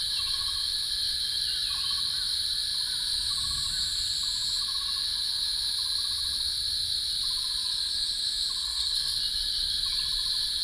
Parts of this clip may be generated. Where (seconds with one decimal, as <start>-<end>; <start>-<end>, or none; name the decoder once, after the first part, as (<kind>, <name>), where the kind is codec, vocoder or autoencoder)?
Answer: 8.6-9.2 (codec, SNAC)

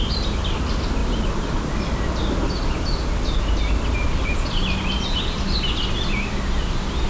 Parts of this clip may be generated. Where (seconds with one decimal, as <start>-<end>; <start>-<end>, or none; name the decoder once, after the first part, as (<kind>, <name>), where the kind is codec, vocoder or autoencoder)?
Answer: none

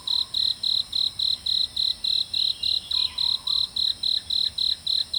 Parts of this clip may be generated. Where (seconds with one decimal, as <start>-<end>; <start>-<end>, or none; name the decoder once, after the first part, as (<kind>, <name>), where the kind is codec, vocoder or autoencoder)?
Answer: none

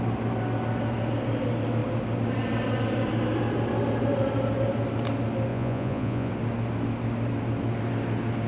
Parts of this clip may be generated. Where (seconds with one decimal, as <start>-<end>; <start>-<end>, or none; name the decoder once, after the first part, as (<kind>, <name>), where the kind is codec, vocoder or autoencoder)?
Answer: 5.5-6.3 (vocoder, Vocos)

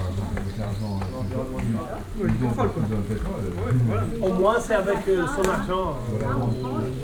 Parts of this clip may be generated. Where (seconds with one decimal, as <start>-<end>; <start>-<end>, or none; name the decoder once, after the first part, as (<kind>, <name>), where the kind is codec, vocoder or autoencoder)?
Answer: 0.0-0.7 (vocoder, BigVGAN v2); 4.3-7.0